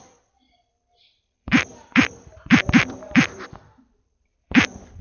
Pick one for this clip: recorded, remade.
remade